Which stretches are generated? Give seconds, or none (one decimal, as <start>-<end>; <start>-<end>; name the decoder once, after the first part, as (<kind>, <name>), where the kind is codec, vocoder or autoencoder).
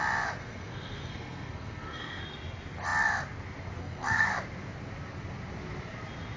0.4-2.2 (codec, SNAC); 3.8-4.3